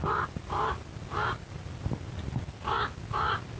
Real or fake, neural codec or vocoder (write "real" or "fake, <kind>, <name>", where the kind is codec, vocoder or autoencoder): real